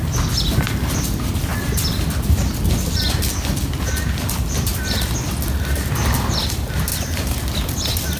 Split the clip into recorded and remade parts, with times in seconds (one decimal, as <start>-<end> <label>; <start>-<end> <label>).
0.0-8.2 recorded